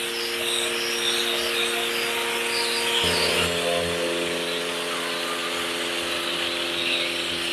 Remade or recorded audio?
recorded